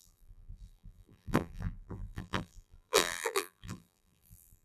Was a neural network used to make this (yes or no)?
yes